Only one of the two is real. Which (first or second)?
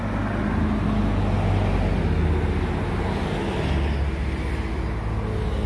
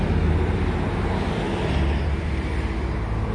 first